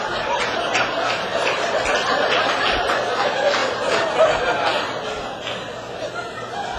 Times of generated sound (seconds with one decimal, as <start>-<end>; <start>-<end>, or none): 1.3-3.0